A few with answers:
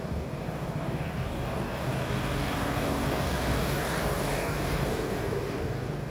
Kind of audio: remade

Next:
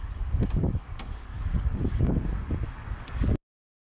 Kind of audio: remade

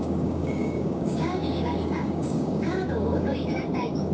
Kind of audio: remade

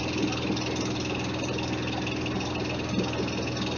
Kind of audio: recorded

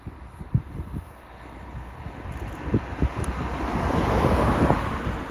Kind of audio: recorded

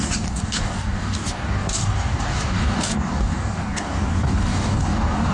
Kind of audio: remade